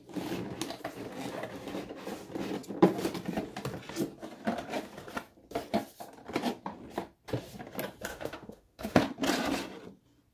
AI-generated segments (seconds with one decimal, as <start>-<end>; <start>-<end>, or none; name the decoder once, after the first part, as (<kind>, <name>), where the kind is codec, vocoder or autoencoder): 8.1-9.0 (autoencoder, DAC-VAE)